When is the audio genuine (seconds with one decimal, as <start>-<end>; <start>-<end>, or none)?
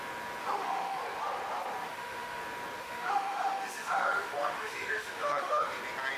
0.0-0.4; 1.0-1.8; 2.4-2.8; 5.8-6.2